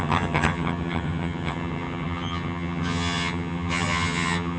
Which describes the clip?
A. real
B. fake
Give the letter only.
B